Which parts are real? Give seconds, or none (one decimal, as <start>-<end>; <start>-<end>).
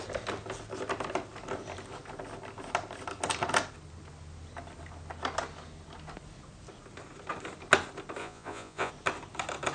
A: 0.0-8.2; 8.9-9.7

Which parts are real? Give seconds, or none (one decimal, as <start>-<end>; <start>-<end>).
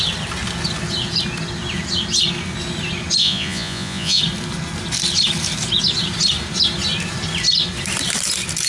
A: 0.0-3.2; 4.2-8.7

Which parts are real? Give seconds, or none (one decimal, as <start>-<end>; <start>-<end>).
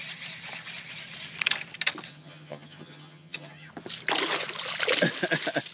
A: 0.0-2.1; 3.7-5.7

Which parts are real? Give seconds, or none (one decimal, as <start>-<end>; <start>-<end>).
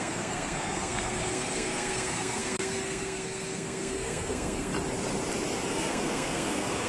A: 4.7-5.7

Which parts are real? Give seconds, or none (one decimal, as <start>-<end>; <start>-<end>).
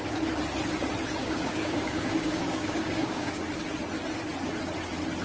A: 0.0-1.2; 3.4-5.2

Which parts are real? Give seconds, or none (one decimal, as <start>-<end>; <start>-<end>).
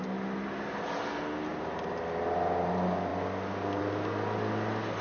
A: 0.0-5.0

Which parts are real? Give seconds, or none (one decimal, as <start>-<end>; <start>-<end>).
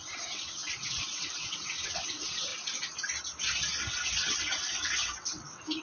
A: 2.5-3.9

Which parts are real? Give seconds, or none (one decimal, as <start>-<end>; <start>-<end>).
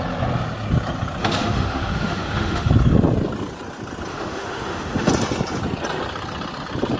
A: 0.0-1.2; 2.7-4.1; 5.1-7.0